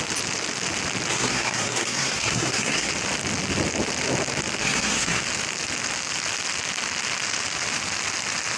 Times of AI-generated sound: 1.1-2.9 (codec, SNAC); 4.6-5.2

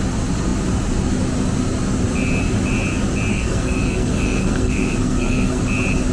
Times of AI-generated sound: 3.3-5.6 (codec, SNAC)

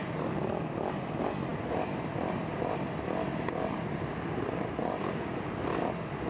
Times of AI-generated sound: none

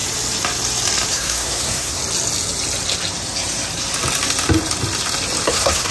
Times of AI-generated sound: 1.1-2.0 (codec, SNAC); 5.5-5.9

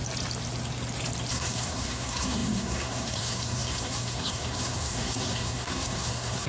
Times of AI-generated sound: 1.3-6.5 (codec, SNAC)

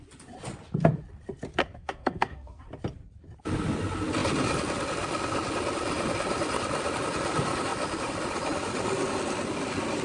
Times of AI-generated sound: 1.6-2.6 (codec, SNAC)

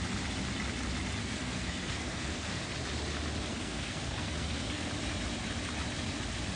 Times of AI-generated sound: 1.2-2.6 (codec, SNAC); 3.5-4.9